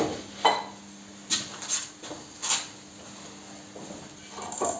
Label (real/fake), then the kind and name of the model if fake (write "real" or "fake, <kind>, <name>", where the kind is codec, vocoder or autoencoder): real